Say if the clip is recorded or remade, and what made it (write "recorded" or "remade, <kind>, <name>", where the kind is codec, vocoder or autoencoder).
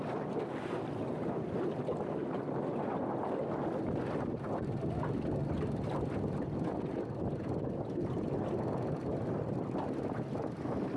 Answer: recorded